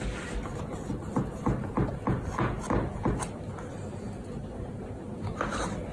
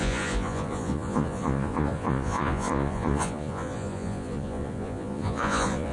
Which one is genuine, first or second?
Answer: first